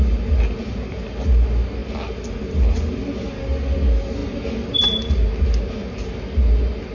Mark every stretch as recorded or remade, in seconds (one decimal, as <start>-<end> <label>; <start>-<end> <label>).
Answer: 0.0-6.9 recorded